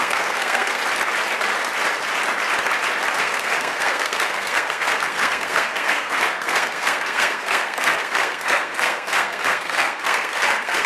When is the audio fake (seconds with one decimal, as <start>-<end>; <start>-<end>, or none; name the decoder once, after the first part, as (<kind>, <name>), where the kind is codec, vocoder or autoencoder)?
0.0-0.8 (codec, SNAC); 3.2-10.9